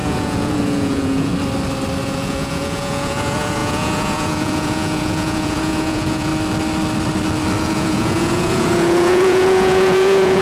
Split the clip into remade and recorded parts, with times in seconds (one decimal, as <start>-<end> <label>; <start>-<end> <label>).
0.0-1.3 remade; 1.3-2.0 recorded; 2.0-6.3 remade; 6.3-7.6 recorded; 7.6-10.4 remade